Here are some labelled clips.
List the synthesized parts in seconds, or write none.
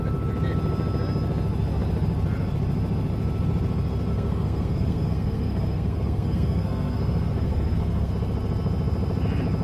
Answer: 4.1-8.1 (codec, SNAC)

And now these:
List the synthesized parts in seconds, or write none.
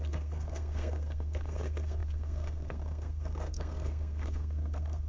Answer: 0.0-5.1 (codec, SNAC)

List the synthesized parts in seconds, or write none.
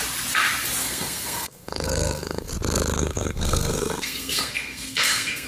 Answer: 0.8-2.5 (codec, SNAC); 3.0-5.5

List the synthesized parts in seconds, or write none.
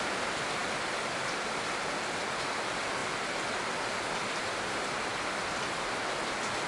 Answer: none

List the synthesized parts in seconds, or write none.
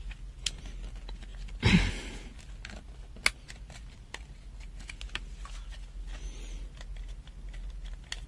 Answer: none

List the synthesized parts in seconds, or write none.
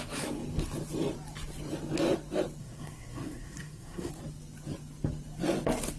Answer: 2.6-4.1 (codec, SNAC)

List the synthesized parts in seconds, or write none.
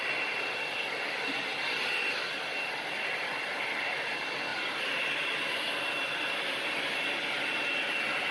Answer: none